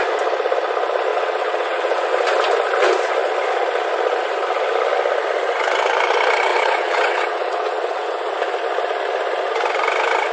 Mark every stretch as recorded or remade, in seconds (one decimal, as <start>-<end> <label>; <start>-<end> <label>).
0.0-1.1 recorded; 1.1-2.1 remade; 2.1-6.5 recorded; 6.5-8.3 remade; 8.3-10.3 recorded